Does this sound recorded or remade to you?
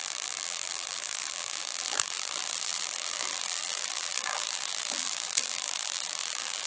remade